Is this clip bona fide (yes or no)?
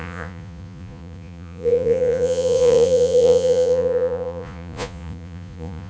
no